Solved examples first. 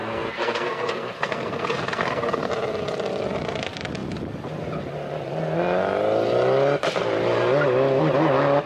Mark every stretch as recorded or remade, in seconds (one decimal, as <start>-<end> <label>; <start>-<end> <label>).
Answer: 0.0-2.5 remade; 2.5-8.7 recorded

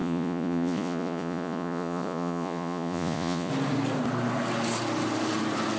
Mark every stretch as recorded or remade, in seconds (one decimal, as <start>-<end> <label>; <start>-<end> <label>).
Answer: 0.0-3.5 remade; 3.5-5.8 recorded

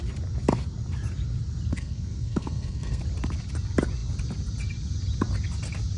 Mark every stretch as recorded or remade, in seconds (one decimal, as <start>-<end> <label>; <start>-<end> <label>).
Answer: 0.0-1.7 recorded; 1.7-3.0 remade; 3.0-6.0 recorded